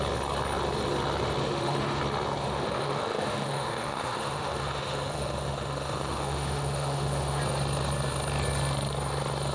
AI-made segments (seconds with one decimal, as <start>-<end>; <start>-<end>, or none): 1.4-2.0; 2.4-7.4